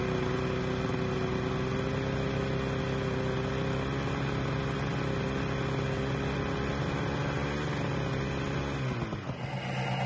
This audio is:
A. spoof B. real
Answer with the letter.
B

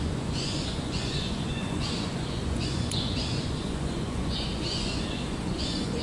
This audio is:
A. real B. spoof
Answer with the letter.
B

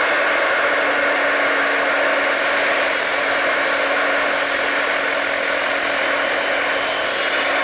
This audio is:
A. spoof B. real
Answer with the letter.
B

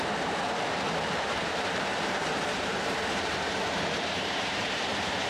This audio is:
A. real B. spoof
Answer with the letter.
B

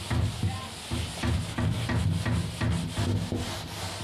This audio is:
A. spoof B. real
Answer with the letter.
B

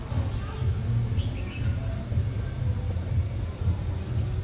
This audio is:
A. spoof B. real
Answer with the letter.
B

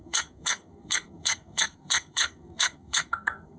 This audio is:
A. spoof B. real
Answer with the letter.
A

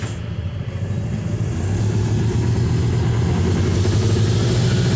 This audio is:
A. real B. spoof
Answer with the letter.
A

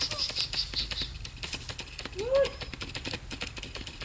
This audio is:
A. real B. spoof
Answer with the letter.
A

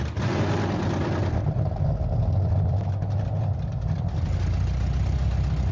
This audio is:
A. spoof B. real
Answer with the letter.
B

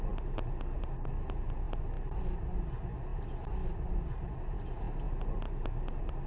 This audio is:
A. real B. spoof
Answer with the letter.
A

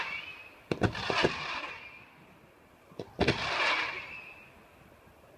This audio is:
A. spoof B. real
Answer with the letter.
B